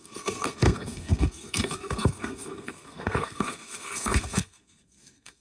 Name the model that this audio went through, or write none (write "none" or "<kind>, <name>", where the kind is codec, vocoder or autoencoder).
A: codec, SNAC